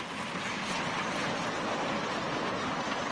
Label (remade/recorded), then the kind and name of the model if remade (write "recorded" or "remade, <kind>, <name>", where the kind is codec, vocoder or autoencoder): recorded